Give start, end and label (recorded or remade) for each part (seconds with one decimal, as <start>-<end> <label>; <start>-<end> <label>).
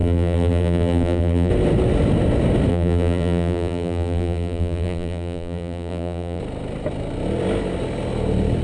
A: 0.0-1.5 remade; 1.5-2.7 recorded; 2.7-6.4 remade; 6.4-8.6 recorded